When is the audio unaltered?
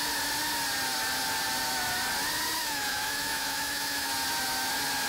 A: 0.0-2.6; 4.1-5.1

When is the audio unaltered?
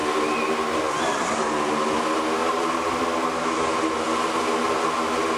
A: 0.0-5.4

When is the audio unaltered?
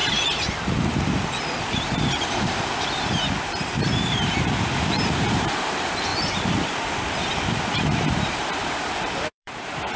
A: 0.0-1.7; 6.1-7.7